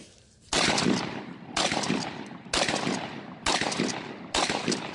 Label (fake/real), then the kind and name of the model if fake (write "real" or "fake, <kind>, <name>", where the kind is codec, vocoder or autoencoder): real